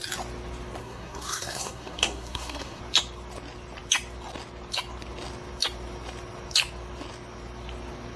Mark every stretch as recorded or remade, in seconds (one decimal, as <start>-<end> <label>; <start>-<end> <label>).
0.0-0.8 recorded; 0.8-2.8 remade; 2.8-8.2 recorded